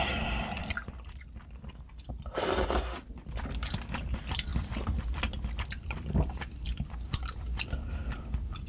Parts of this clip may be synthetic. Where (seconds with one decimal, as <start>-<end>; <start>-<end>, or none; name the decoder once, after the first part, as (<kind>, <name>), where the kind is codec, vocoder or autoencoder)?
0.0-0.8 (vocoder, BigVGAN v2); 2.1-4.5; 5.5-8.7